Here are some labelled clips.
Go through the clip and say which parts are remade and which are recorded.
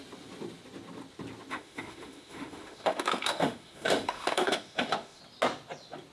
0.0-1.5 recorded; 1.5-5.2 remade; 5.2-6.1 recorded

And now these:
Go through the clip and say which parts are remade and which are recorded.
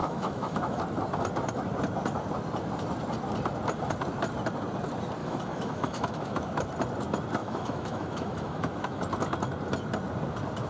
0.0-0.8 remade; 0.8-5.2 recorded; 5.2-6.6 remade; 6.6-7.4 recorded; 7.4-9.0 remade; 9.0-10.7 recorded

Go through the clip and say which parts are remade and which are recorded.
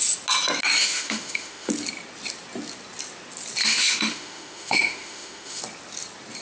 0.0-0.8 recorded; 0.8-1.7 remade; 1.7-3.6 recorded; 3.6-5.6 remade; 5.6-6.4 recorded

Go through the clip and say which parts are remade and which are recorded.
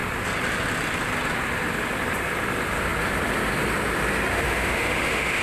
0.0-4.3 recorded; 4.3-5.4 remade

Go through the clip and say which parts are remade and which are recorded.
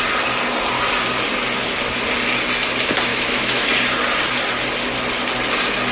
0.0-3.1 recorded; 3.1-3.7 remade; 3.7-5.9 recorded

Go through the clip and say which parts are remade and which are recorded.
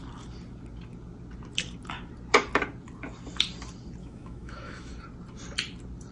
0.0-4.0 recorded; 4.0-4.9 remade; 4.9-6.1 recorded